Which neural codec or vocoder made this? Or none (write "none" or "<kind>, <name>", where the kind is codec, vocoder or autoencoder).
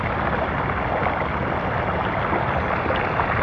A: none